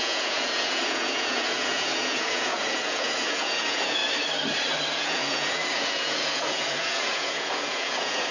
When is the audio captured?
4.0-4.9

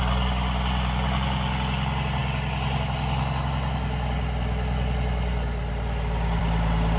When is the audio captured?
0.0-7.0

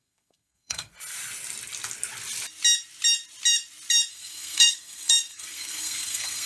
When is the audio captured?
0.9-4.1

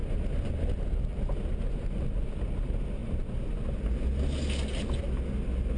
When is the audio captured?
0.0-5.8

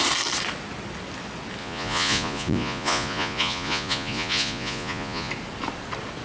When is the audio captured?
0.0-1.6; 5.3-6.2

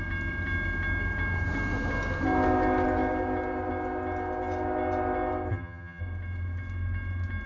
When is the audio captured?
0.0-5.5; 6.0-7.5

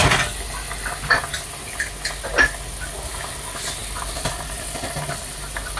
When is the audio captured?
0.0-3.8